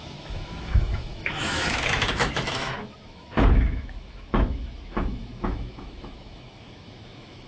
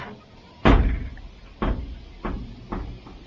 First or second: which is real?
second